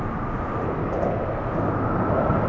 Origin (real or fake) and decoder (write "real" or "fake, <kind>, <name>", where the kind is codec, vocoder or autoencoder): real